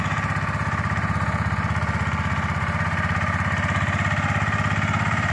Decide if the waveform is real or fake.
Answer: fake